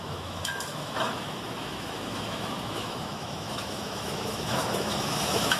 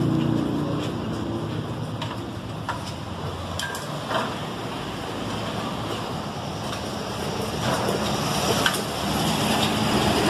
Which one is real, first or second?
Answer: second